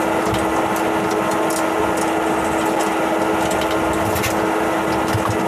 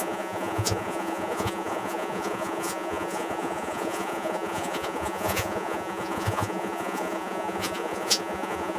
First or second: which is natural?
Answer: first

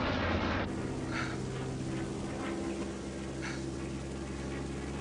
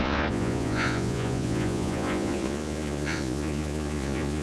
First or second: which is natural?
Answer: first